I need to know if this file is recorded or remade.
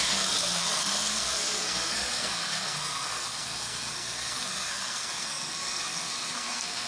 remade